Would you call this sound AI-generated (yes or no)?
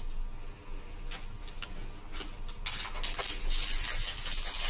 no